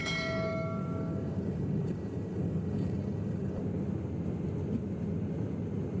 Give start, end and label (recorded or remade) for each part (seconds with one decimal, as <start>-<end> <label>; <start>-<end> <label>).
0.0-3.6 remade; 3.6-6.0 recorded

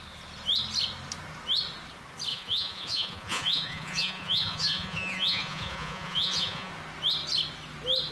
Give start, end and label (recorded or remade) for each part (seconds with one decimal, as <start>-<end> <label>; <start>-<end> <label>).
0.0-2.3 recorded; 2.3-6.7 remade; 6.7-8.1 recorded